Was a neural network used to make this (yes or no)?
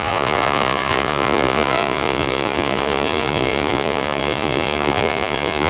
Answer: yes